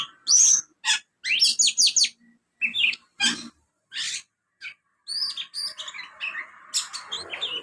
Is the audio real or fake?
real